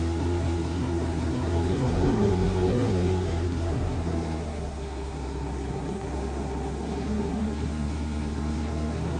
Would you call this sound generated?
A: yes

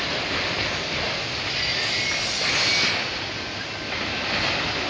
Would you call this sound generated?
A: no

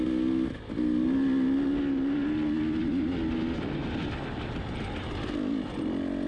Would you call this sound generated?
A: no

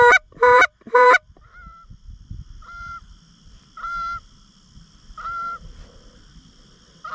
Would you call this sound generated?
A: yes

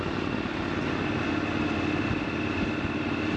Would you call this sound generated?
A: no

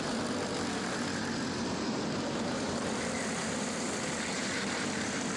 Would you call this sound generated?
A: yes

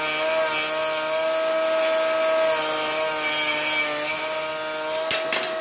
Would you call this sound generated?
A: no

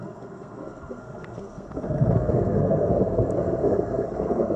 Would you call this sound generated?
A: yes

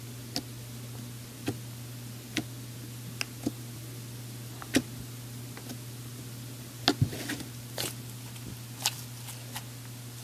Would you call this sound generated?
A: no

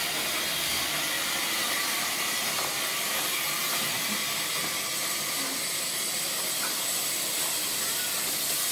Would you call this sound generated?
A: no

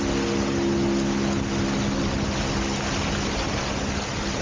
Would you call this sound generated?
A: no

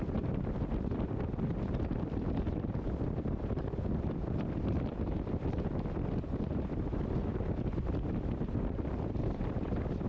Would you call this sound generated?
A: yes